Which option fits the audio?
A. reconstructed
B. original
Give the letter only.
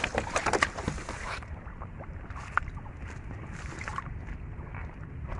B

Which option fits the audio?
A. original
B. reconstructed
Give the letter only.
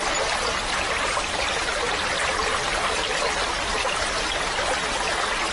A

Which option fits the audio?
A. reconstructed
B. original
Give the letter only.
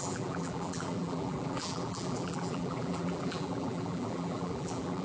A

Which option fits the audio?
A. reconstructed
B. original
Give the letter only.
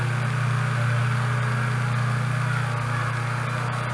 B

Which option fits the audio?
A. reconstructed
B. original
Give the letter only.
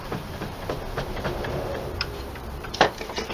A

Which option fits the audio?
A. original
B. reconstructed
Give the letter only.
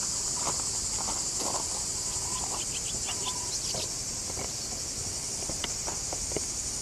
A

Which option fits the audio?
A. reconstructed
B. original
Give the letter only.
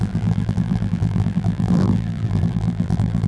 A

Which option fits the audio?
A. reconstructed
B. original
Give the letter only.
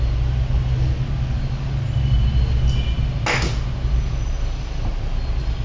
B